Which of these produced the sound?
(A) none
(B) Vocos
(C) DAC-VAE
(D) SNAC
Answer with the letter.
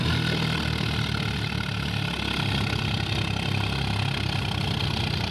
A